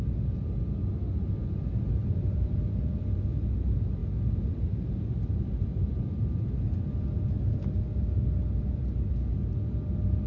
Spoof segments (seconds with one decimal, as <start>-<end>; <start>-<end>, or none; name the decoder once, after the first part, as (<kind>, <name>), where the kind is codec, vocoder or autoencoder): 1.4-2.9 (vocoder, BigVGAN v2)

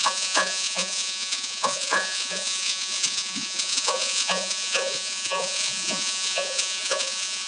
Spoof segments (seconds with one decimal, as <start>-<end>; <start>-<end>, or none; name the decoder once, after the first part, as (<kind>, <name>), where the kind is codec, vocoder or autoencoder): 0.0-7.5 (vocoder, Vocos)